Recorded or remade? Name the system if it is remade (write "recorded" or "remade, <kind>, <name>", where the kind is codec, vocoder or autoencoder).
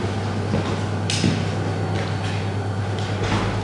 recorded